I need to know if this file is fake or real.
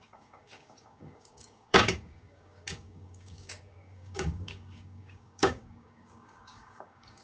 fake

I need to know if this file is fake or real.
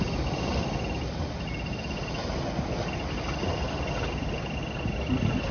real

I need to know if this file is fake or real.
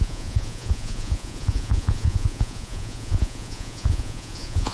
fake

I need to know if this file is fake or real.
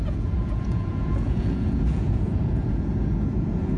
fake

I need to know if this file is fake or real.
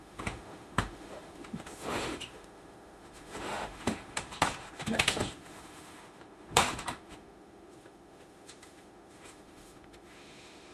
fake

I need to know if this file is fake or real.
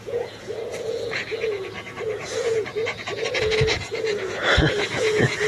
fake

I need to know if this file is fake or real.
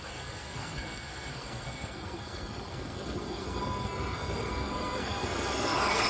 fake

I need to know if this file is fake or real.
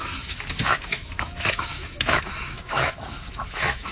fake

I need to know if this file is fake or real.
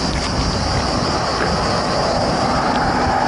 real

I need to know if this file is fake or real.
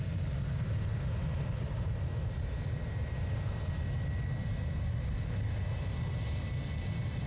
real